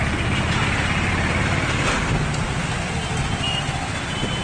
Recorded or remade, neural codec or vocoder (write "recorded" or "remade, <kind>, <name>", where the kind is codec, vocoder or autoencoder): recorded